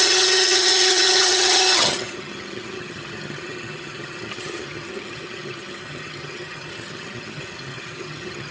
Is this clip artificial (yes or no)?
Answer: yes